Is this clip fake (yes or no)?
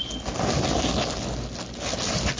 no